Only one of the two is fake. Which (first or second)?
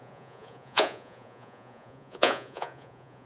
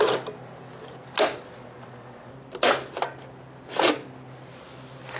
first